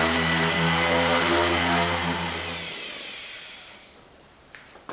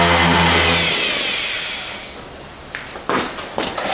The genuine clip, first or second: second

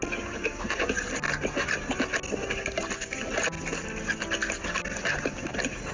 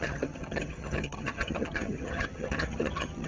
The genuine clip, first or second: first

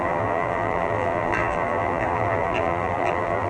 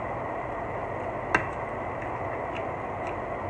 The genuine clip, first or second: second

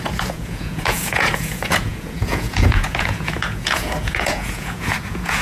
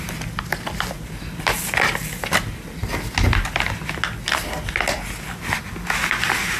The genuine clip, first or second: second